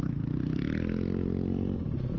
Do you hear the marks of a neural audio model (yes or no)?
no